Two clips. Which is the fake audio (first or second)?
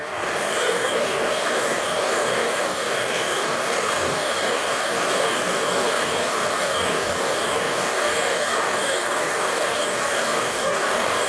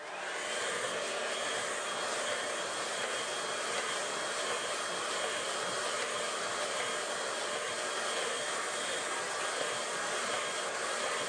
first